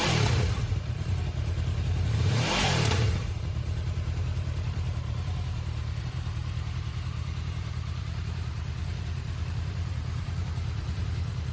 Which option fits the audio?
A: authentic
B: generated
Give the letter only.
B